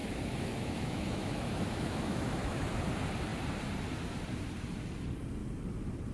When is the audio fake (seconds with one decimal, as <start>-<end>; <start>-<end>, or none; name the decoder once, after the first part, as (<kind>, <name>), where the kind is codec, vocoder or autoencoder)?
0.0-2.7 (autoencoder, DAC-VAE)